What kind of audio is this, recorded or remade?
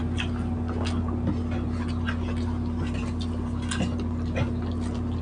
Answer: recorded